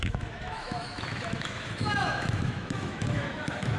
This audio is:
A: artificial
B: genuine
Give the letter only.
A